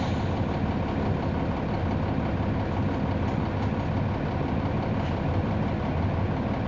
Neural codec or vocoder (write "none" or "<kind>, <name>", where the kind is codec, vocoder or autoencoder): none